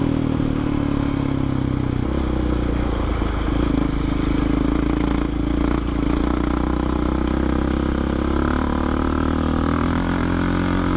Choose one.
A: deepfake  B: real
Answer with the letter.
B